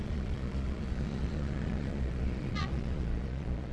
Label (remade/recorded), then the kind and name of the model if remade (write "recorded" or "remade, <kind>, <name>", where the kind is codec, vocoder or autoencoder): remade, vocoder, Vocos